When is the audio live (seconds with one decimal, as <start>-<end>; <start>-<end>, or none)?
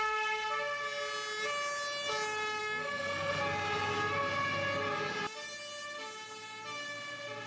0.0-2.6; 3.4-7.5